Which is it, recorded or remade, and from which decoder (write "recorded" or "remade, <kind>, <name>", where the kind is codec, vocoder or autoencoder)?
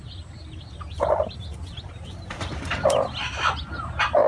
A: recorded